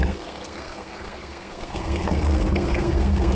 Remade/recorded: remade